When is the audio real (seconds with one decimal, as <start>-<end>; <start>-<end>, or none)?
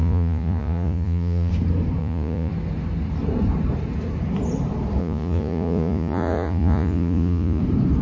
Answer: 1.5-2.0; 2.5-5.0; 7.6-8.0